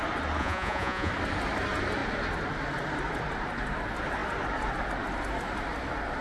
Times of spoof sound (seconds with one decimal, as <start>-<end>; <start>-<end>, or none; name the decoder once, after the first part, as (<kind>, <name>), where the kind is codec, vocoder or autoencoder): 0.4-1.1 (vocoder, Vocos)